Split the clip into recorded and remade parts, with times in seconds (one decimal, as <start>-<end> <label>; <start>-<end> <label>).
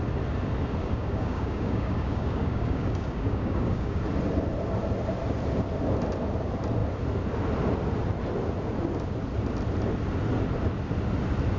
0.0-0.8 recorded; 0.8-4.0 remade; 4.0-11.6 recorded